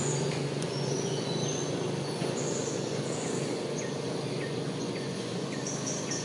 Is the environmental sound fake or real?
fake